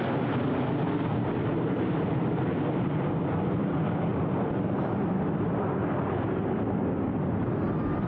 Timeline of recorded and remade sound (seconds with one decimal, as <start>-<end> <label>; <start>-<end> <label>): 0.0-8.1 recorded